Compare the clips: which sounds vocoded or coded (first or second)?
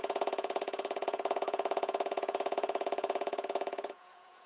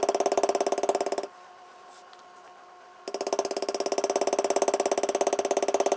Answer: first